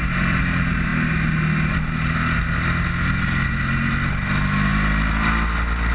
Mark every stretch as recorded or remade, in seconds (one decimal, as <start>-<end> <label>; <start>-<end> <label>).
0.0-5.9 recorded